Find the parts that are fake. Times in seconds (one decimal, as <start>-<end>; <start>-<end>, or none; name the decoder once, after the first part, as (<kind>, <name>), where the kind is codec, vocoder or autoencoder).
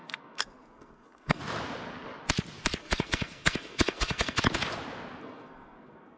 0.0-1.4 (codec, SNAC); 2.8-4.4; 5.2-6.2